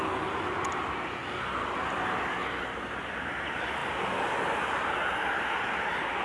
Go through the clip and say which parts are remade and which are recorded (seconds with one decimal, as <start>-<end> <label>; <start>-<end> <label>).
0.0-6.2 recorded